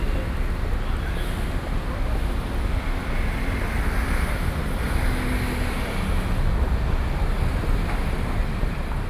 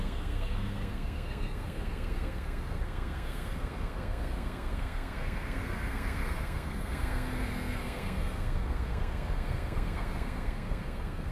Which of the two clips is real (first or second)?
first